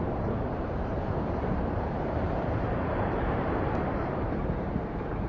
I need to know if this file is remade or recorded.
remade